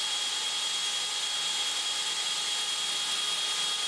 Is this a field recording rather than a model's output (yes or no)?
yes